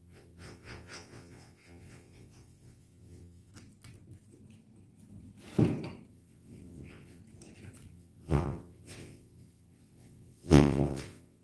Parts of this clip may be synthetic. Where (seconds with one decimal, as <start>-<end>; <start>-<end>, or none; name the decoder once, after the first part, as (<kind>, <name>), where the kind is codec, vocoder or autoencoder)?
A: 0.0-3.5 (vocoder, WaveNeXt); 6.1-7.2; 7.9-11.4